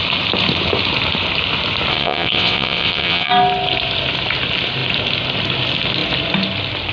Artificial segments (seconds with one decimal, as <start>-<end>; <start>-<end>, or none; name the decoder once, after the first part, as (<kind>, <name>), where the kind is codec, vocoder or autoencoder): 1.9-3.3 (vocoder, WaveNeXt)